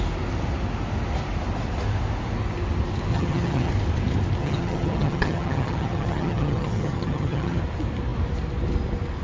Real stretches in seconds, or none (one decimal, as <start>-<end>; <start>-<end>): 0.0-3.1; 3.7-4.4; 7.6-9.2